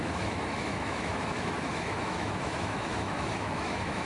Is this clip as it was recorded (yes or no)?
no